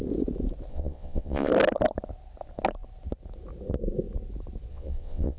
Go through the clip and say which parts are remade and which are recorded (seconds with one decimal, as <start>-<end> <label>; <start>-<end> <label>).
0.0-0.7 recorded; 0.7-1.5 remade; 1.5-4.7 recorded; 4.7-5.4 remade